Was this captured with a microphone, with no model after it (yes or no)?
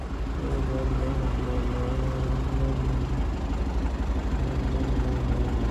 yes